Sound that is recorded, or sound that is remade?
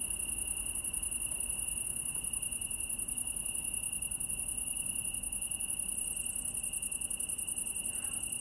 recorded